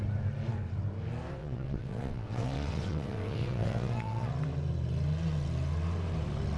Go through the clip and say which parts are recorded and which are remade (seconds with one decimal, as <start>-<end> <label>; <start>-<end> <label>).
0.0-1.4 recorded; 1.4-4.3 remade; 4.3-6.6 recorded